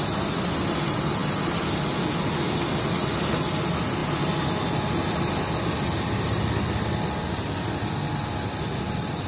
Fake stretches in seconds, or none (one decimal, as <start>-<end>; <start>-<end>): none